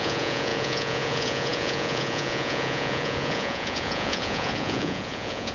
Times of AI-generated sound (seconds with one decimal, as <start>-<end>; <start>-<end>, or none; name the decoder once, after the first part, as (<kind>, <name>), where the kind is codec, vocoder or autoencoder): 0.0-5.5 (vocoder, Vocos)